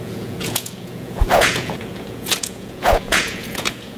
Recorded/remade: remade